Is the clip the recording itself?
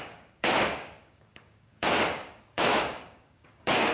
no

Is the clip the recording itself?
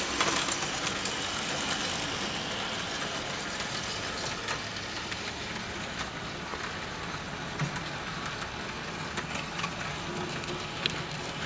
yes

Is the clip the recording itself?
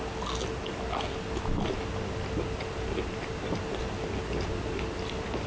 yes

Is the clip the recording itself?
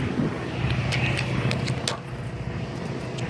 yes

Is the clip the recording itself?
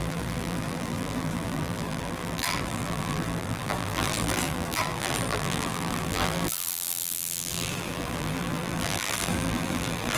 no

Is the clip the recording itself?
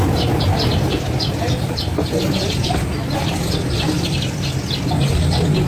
yes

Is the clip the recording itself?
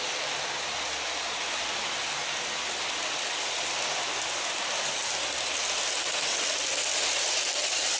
yes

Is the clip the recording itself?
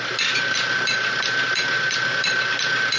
yes